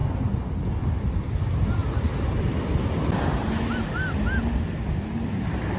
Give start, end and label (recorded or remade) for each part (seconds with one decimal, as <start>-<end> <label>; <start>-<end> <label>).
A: 0.0-5.8 recorded